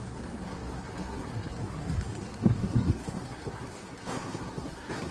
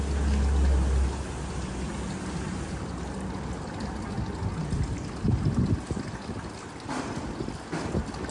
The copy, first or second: first